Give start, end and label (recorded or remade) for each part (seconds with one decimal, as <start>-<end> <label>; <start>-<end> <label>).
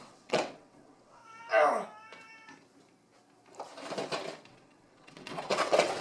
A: 0.0-1.2 remade; 1.2-4.5 recorded; 4.5-6.0 remade